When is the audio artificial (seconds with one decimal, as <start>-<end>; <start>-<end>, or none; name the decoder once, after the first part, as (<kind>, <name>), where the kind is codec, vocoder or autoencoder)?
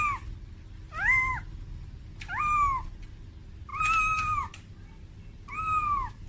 none